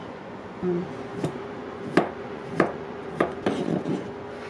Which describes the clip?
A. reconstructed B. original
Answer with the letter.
A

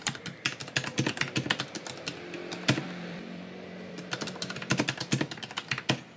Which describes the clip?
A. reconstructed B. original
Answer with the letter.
A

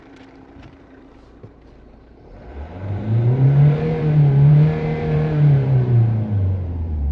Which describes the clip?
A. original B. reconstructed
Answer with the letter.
B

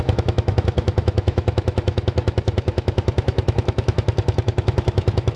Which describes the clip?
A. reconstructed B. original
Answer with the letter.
A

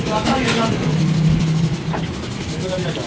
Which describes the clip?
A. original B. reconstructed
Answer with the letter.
A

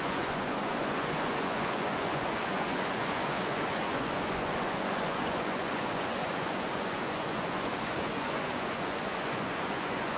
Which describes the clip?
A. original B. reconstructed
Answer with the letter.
B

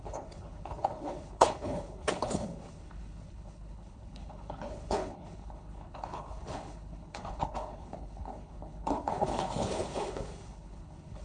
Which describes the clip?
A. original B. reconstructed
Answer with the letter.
B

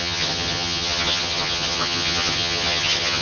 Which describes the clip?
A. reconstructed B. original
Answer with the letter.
A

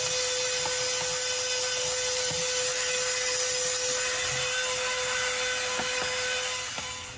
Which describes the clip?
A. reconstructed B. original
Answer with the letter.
B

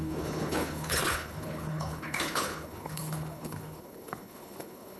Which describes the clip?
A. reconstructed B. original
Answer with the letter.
A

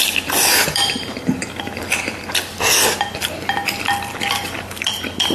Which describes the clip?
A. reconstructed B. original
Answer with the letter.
A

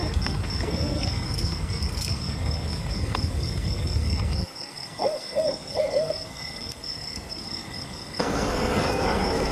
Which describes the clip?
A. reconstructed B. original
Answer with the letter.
A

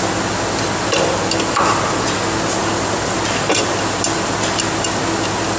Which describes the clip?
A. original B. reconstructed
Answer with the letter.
A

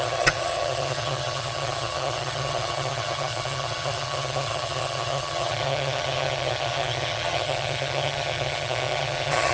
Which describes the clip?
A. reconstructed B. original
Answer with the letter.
A